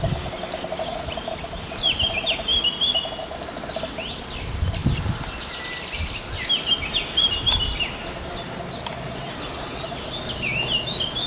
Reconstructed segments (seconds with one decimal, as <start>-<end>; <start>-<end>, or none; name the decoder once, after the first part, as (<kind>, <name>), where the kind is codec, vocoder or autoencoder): none